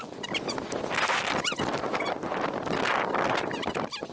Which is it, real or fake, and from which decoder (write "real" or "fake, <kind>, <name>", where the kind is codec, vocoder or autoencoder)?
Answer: real